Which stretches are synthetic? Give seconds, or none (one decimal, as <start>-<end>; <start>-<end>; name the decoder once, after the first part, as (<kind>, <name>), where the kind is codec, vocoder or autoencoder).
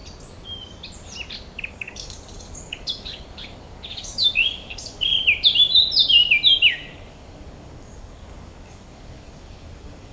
1.7-5.1 (codec, DAC); 6.7-10.1